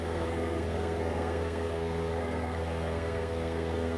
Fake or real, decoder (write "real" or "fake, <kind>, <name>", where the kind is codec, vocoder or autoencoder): fake, codec, SNAC